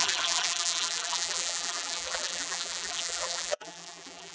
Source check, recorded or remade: remade